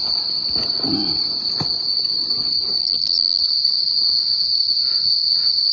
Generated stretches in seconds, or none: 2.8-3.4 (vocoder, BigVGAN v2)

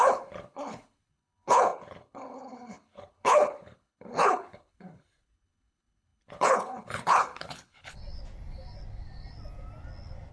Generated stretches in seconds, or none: 0.0-8.0 (codec, HILCodec)

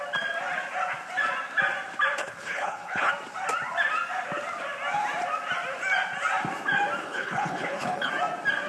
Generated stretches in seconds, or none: 2.2-3.1 (codec, HILCodec); 7.0-8.1